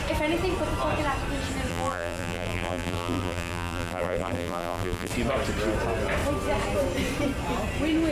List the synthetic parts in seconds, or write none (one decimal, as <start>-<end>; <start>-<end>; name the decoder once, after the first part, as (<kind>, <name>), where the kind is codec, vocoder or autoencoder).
1.7-5.1 (vocoder, BigVGAN v2)